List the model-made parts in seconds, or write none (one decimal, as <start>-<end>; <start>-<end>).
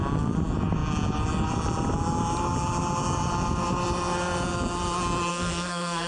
5.3-6.1